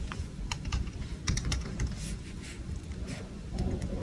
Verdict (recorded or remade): remade